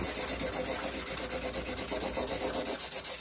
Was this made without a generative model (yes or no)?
yes